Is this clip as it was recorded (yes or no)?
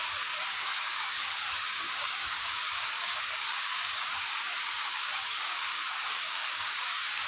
no